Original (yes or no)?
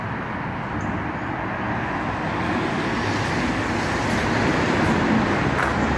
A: yes